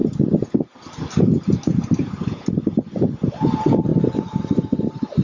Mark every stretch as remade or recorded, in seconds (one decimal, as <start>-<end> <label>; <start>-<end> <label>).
0.0-5.2 recorded